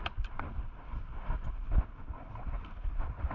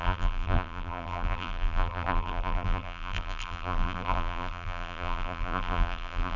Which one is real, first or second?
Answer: first